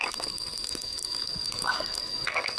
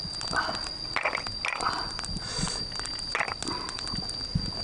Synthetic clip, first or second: first